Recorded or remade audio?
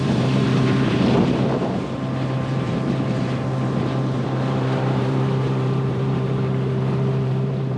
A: remade